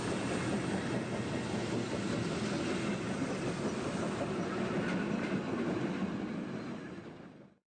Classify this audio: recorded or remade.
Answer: recorded